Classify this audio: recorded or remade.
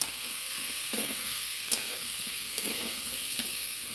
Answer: remade